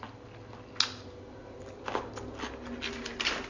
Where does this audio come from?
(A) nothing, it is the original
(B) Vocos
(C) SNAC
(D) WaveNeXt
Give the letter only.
A